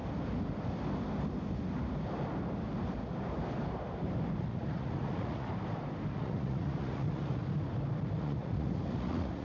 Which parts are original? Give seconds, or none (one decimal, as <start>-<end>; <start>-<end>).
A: 0.0-4.4; 5.5-6.1; 7.4-8.2